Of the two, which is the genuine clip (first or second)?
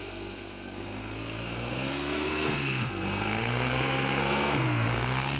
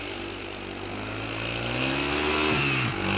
second